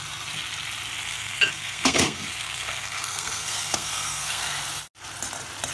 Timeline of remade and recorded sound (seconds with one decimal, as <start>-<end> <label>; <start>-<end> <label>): 0.0-1.1 recorded; 1.1-4.5 remade; 4.5-5.7 recorded